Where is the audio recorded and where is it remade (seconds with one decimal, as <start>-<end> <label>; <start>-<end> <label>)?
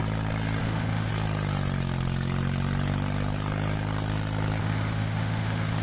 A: 0.0-0.6 recorded; 0.6-1.1 remade; 1.1-4.6 recorded; 4.6-5.8 remade